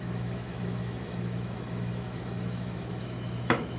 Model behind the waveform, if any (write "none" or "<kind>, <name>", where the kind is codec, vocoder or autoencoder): autoencoder, DAC-VAE